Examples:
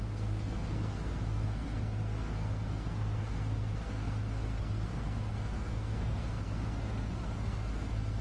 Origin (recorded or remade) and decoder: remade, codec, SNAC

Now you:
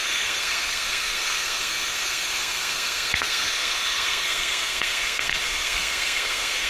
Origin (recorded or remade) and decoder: remade, codec, SNAC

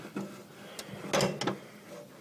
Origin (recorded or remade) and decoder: recorded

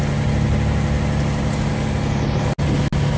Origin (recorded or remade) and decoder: recorded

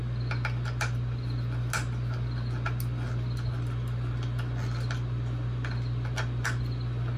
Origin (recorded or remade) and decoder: recorded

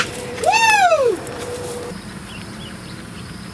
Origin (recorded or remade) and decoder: remade, vocoder, BigVGAN v2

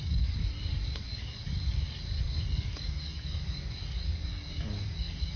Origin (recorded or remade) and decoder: remade, codec, DAC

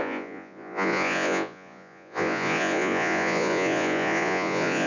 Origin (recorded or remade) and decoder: remade, vocoder, Vocos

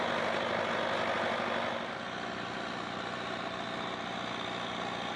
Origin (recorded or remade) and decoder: recorded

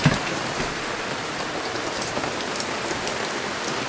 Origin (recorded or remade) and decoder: recorded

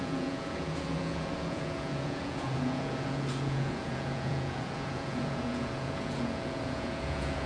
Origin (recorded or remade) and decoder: remade, vocoder, Vocos